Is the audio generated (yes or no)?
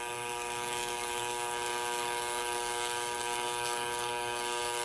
yes